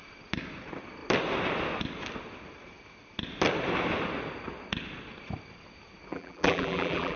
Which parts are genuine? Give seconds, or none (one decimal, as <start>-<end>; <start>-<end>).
0.0-6.1